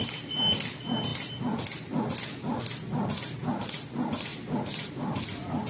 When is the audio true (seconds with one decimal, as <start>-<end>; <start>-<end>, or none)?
0.0-5.7